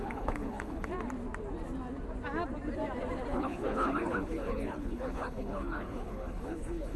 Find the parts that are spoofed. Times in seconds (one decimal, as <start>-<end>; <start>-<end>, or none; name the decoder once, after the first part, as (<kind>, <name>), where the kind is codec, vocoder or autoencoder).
0.0-0.9 (codec, HILCodec); 3.3-7.0